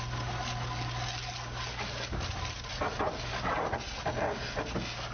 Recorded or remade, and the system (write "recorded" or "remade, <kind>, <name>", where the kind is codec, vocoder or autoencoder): recorded